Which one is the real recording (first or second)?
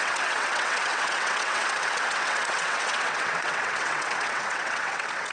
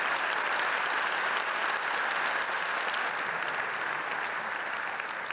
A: second